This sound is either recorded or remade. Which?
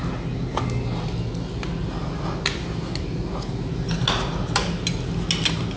recorded